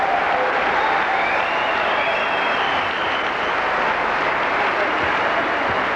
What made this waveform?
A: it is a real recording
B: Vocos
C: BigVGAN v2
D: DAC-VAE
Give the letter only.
A